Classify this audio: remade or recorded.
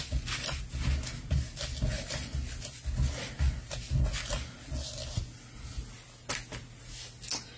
recorded